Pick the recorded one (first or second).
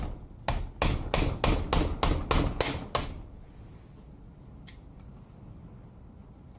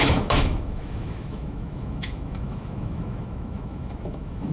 first